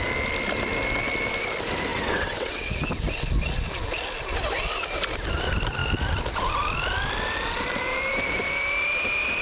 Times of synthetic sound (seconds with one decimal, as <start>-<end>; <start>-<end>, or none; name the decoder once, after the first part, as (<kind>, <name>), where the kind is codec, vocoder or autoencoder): 1.9-2.7 (vocoder, WaveNeXt)

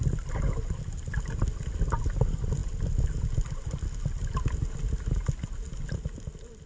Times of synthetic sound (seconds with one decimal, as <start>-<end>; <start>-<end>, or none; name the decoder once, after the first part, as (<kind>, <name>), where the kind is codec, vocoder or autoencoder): none

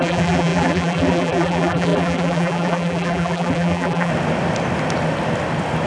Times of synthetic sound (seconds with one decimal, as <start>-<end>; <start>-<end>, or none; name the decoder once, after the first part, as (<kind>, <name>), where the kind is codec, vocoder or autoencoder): 0.0-4.1 (vocoder, BigVGAN v2)

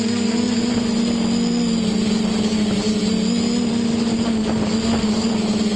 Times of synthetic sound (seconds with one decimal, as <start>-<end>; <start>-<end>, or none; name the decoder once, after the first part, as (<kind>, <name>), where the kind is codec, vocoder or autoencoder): none